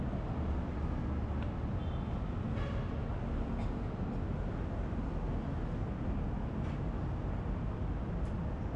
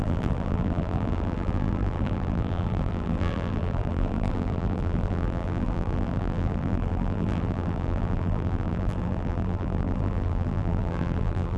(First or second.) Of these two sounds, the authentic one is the first